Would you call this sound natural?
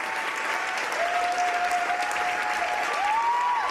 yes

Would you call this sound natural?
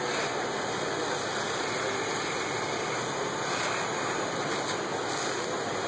yes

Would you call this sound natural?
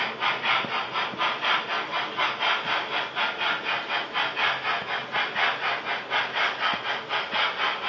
yes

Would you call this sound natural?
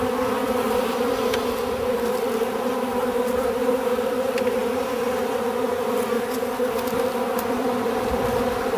no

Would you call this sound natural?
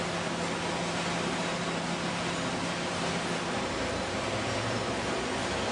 yes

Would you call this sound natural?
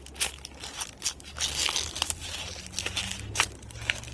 yes